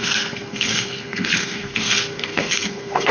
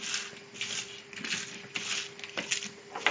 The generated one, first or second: first